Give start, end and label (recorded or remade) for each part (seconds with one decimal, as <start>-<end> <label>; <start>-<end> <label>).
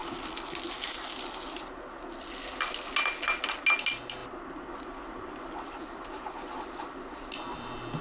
0.0-8.0 recorded